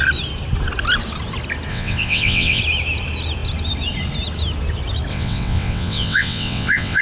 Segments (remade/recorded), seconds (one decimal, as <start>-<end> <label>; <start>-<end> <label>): 0.0-1.7 recorded; 1.7-2.6 remade; 2.6-5.1 recorded; 5.1-7.0 remade